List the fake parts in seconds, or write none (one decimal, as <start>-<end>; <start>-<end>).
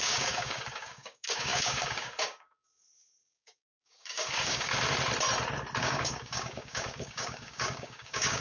0.0-4.7; 5.8-8.4